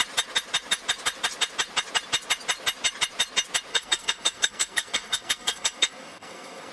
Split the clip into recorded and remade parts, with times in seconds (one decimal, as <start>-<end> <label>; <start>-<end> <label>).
0.0-3.7 recorded; 3.7-6.7 remade

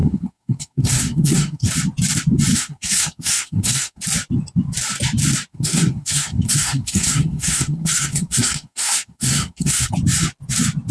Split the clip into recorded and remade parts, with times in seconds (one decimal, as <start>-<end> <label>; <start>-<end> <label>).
0.0-1.7 remade; 1.7-2.5 recorded; 2.5-4.0 remade; 4.0-5.5 recorded; 5.5-9.9 remade; 9.9-10.9 recorded

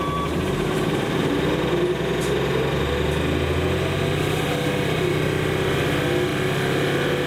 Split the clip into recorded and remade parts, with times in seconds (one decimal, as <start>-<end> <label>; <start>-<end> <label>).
0.0-7.3 recorded

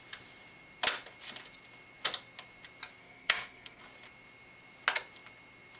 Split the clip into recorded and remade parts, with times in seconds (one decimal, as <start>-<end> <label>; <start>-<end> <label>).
0.0-3.0 recorded; 3.0-3.8 remade; 3.8-5.8 recorded

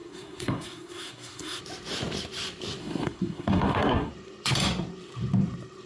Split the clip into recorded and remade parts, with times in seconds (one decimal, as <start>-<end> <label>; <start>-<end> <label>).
0.0-1.6 remade; 1.6-2.8 recorded; 2.8-4.1 remade; 4.1-5.9 recorded

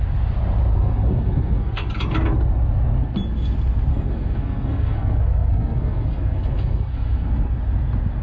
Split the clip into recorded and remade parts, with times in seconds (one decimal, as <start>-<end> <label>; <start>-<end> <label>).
0.0-0.7 recorded; 0.7-1.9 remade; 1.9-3.9 recorded; 3.9-7.6 remade; 7.6-8.2 recorded